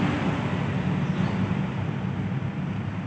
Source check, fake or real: real